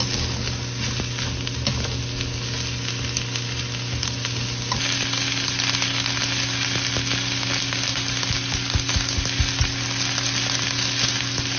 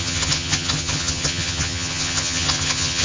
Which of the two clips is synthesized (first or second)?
second